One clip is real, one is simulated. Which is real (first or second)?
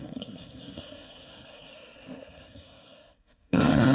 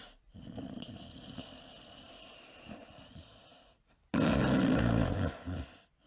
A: second